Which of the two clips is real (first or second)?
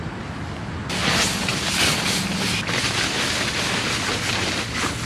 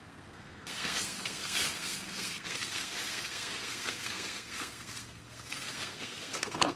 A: first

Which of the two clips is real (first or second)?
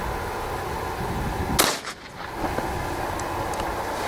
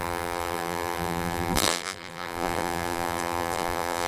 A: first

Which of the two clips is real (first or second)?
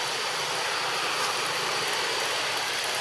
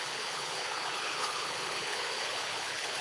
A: first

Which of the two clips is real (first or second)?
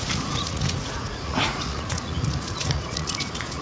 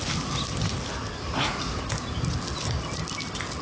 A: second